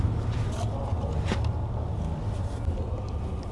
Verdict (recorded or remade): recorded